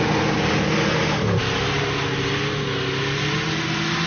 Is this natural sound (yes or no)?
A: yes